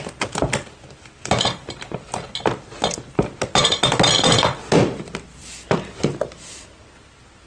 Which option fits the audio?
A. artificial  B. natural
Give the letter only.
B